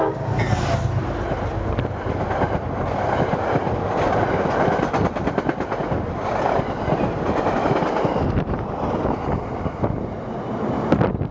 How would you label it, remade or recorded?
recorded